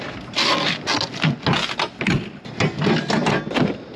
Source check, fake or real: real